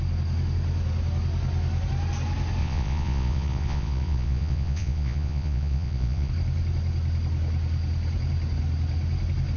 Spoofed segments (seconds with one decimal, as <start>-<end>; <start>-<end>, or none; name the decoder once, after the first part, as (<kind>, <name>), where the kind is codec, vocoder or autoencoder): 2.6-6.3 (vocoder, Vocos)